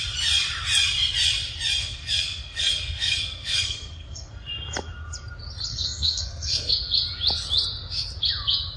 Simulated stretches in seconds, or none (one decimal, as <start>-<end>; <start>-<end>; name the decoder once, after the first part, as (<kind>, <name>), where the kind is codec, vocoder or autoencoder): 1.8-4.5 (codec, SNAC); 5.7-6.7